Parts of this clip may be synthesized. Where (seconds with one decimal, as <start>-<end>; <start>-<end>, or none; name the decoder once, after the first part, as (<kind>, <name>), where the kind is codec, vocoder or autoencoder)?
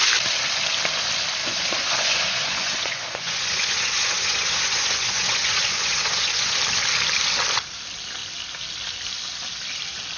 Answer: 1.4-6.6 (vocoder, Vocos)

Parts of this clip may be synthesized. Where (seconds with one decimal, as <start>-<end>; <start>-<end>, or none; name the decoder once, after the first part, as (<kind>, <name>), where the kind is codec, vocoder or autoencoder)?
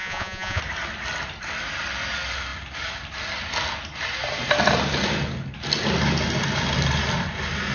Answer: 0.0-0.6 (vocoder, Vocos)